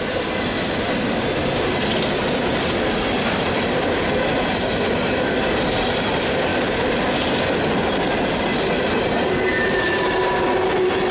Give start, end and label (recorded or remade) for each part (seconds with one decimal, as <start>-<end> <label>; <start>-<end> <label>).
0.0-11.1 recorded